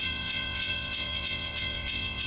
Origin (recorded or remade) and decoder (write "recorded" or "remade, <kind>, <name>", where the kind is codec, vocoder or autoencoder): remade, vocoder, WaveNeXt